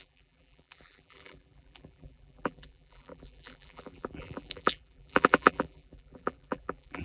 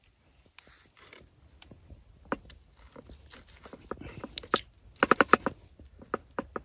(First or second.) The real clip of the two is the second